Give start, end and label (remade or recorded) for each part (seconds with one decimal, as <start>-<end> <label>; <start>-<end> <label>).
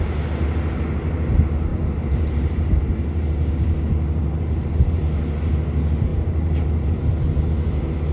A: 0.0-1.7 recorded; 1.7-3.5 remade; 3.5-4.2 recorded; 4.2-5.0 remade; 5.0-6.1 recorded; 6.1-7.0 remade; 7.0-8.1 recorded